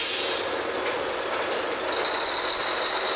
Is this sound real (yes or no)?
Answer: yes